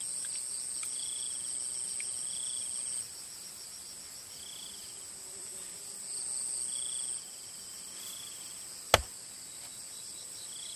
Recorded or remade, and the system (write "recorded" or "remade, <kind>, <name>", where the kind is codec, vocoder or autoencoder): recorded